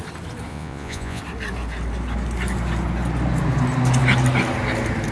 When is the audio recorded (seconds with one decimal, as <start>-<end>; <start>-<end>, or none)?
0.0-0.5; 1.2-5.1